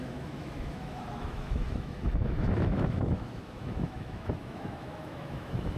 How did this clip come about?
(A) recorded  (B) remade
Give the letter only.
B